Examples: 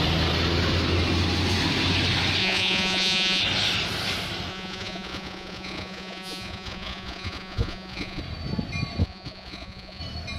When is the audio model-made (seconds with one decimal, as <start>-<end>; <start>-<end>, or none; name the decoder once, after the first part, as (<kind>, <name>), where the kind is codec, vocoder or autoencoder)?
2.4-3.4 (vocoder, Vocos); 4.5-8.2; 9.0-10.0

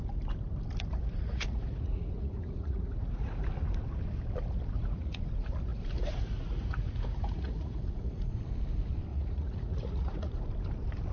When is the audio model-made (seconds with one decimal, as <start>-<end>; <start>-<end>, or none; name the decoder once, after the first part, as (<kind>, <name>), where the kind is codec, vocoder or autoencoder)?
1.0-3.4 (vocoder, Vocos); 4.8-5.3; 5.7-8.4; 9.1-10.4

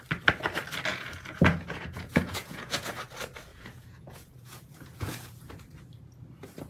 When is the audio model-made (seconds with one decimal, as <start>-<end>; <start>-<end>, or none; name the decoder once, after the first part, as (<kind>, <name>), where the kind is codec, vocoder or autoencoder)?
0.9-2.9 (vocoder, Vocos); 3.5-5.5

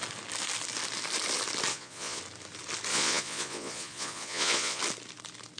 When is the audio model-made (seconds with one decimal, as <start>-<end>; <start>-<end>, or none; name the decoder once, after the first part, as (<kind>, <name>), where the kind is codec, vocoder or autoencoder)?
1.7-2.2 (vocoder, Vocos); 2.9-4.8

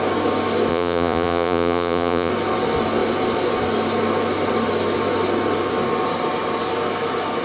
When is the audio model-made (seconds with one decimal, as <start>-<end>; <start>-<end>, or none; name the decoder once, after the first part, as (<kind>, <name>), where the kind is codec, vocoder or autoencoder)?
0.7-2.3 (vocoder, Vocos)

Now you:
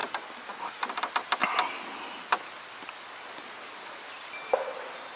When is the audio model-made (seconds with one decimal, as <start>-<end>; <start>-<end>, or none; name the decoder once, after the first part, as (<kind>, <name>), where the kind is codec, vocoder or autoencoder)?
none